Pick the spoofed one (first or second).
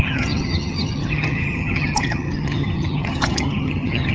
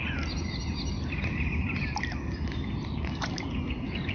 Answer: first